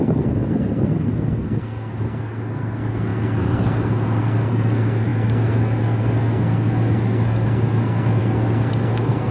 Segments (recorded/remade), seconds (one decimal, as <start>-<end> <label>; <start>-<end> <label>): 0.0-9.3 remade